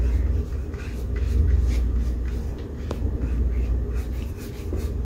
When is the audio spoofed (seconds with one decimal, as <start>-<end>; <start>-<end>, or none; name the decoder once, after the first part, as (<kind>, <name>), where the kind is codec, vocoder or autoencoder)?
none